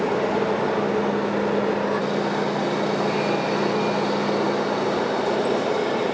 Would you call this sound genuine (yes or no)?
yes